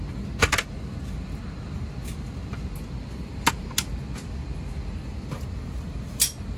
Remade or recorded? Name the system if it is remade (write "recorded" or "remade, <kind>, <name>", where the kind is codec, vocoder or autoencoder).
recorded